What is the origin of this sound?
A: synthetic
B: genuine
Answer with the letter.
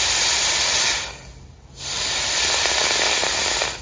B